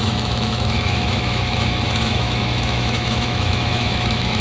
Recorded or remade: remade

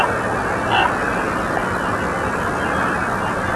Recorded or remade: recorded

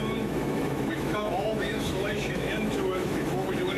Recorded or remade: remade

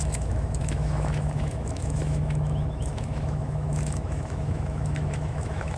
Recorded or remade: remade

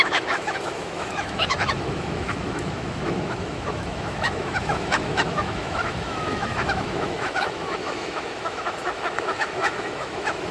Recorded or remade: remade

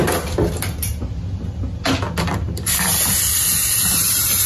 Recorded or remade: recorded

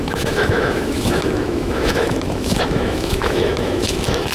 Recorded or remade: remade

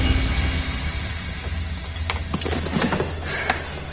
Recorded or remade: recorded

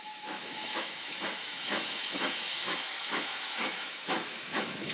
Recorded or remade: remade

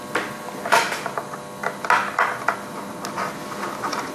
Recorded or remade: recorded